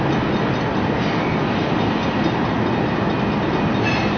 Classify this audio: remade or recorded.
recorded